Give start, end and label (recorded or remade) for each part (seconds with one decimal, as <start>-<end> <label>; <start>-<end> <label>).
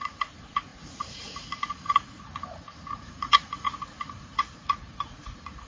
0.0-5.7 remade